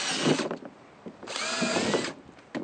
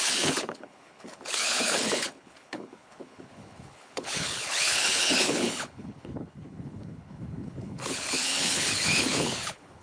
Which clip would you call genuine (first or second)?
first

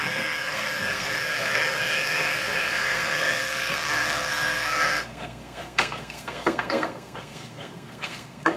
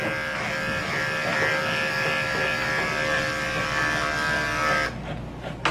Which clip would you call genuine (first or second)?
second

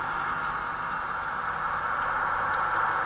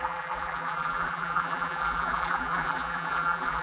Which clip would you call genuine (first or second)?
first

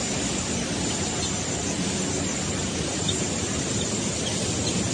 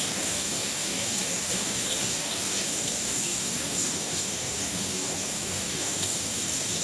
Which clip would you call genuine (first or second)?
first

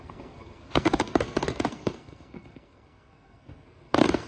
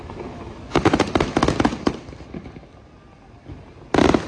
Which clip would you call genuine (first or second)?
second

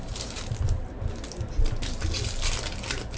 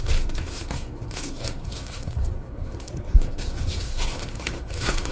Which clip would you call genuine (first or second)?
first